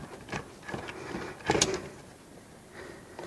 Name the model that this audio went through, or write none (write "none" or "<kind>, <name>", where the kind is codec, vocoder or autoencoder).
none